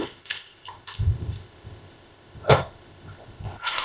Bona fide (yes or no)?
no